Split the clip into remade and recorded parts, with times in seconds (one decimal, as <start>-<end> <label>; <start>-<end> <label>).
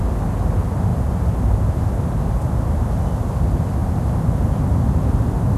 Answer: 0.0-5.6 recorded